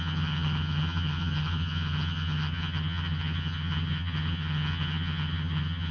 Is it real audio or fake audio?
fake